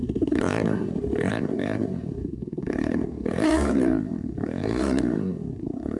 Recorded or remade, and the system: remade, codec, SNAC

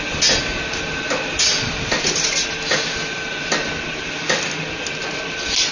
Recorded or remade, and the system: recorded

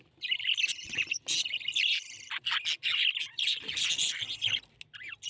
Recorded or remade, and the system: recorded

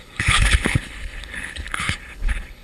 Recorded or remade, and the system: remade, codec, HILCodec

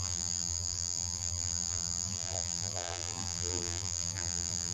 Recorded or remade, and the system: remade, vocoder, BigVGAN v2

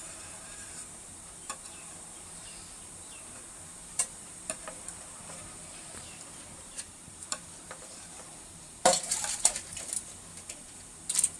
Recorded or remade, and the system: remade, vocoder, BigVGAN v2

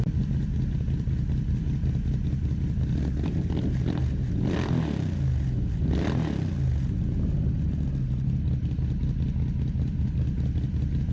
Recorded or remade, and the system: recorded